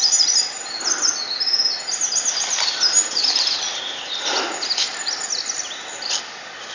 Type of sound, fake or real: real